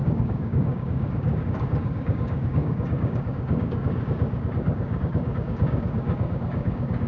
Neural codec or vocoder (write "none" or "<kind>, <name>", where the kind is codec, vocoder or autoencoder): codec, DAC